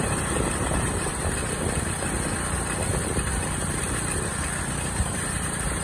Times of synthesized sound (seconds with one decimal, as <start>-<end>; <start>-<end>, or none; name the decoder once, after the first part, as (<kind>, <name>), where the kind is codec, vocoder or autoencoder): 0.0-1.1 (vocoder, BigVGAN v2); 4.6-5.8